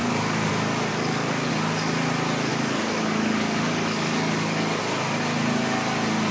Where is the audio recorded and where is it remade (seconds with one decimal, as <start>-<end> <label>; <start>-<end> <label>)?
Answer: 0.0-0.5 remade; 0.5-0.9 recorded; 0.9-1.5 remade; 1.5-2.5 recorded; 2.5-4.8 remade; 4.8-6.3 recorded